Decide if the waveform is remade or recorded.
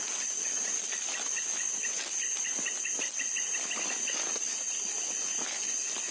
recorded